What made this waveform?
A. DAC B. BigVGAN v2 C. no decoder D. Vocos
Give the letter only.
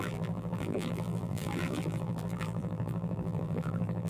B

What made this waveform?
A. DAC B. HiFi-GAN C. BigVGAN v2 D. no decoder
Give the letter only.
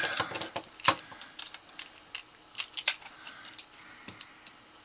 D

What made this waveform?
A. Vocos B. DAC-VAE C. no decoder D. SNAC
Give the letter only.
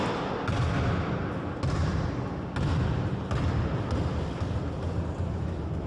C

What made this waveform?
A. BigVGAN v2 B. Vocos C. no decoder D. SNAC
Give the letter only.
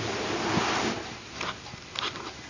C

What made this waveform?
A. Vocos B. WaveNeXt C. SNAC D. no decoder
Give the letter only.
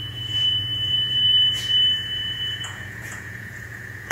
A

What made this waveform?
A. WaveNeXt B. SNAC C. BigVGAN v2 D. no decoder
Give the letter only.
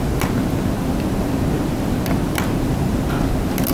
D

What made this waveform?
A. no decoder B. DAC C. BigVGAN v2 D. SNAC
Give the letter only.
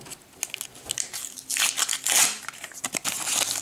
A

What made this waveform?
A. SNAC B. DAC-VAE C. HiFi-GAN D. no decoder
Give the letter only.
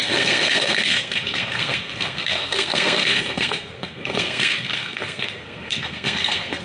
A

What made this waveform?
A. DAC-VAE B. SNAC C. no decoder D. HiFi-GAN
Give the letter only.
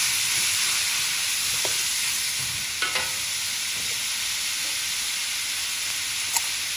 C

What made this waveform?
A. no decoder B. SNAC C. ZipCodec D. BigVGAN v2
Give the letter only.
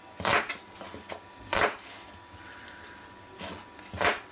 A